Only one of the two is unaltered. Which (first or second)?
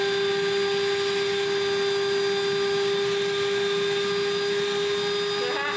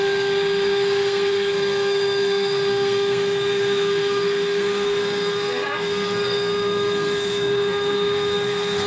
first